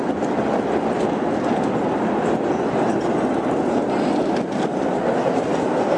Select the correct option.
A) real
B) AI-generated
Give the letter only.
A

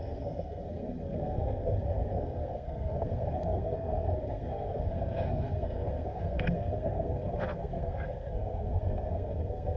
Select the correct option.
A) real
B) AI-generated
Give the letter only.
B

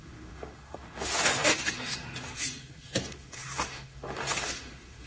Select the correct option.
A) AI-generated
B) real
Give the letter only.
A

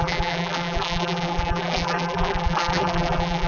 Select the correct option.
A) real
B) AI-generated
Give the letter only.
B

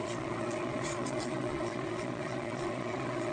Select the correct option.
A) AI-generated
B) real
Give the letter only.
A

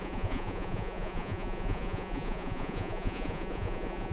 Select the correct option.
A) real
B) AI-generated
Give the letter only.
B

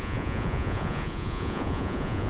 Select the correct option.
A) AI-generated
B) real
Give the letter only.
A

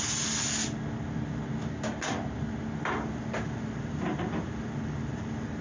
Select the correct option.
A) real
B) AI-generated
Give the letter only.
A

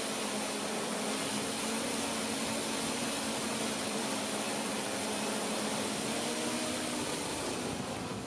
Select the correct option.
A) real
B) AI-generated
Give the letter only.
A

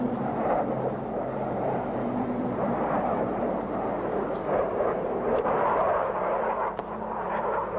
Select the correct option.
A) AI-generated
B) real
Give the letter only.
A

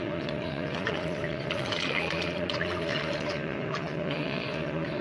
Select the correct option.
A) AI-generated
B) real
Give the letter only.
A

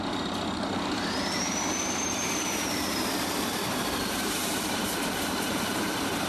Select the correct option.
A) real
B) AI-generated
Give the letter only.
B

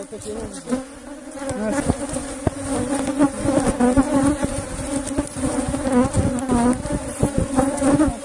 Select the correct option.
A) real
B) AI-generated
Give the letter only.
A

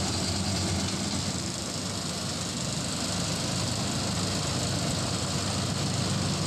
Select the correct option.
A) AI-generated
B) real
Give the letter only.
B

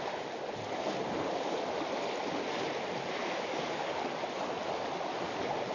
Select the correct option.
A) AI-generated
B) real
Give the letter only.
B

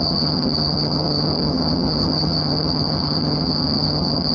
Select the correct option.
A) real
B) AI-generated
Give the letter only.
B